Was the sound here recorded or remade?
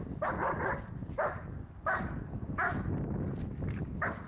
recorded